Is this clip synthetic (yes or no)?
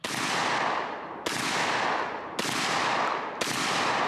no